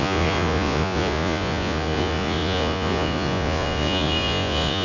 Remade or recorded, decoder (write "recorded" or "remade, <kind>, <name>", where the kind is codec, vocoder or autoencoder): remade, vocoder, Vocos